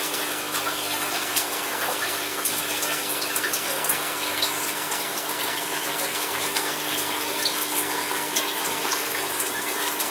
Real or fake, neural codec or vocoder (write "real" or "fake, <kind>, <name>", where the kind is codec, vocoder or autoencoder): fake, codec, SNAC